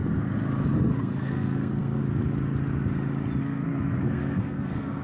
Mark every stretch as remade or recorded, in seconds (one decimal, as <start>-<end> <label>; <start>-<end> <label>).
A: 0.0-1.0 recorded; 1.0-2.0 remade; 2.0-3.4 recorded; 3.4-5.0 remade